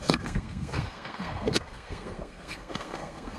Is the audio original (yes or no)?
no